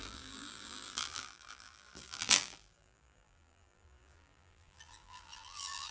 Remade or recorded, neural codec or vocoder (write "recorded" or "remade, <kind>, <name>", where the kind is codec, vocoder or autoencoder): remade, vocoder, BigVGAN v2